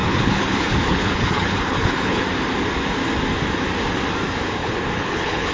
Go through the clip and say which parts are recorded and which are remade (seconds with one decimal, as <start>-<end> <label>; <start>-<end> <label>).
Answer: 0.0-2.2 remade; 2.2-4.6 recorded; 4.6-5.5 remade